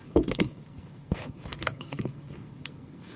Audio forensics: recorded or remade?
remade